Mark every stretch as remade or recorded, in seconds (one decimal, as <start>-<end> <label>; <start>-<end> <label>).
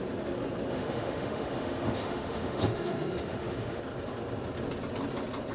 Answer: 0.0-0.7 recorded; 0.7-3.8 remade; 3.8-5.5 recorded